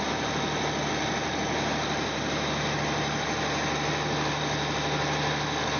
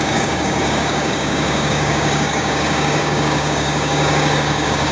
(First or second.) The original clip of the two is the first